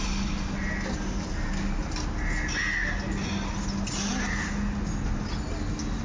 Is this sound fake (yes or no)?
no